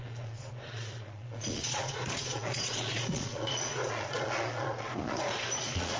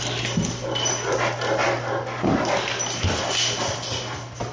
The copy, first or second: first